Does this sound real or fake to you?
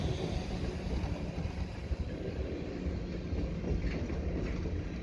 real